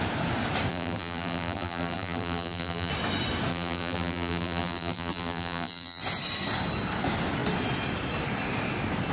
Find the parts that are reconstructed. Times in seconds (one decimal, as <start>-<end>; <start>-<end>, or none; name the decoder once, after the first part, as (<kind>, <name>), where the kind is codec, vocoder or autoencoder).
0.7-2.9 (vocoder, BigVGAN v2); 3.5-6.0